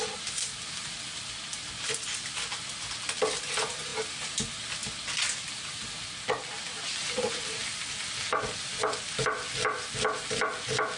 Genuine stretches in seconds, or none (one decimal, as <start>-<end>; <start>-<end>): 0.0-11.0